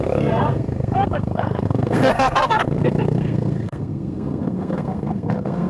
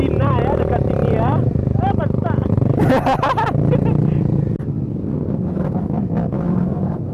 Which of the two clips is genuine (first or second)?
second